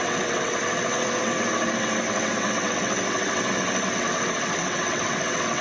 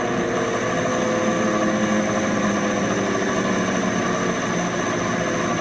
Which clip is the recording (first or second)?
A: second